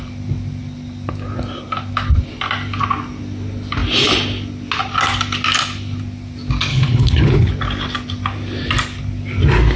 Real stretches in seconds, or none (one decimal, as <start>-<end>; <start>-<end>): 0.0-6.7; 7.5-9.8